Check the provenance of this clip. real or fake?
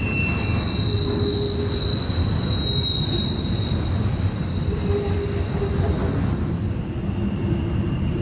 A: real